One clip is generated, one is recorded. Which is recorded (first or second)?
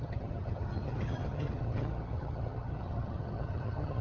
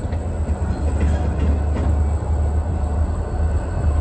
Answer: second